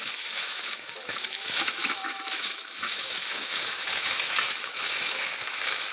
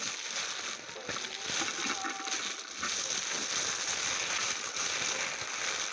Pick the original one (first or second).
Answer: second